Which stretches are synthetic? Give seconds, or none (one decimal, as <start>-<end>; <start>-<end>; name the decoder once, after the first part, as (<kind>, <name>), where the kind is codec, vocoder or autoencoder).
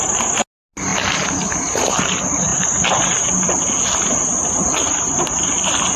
none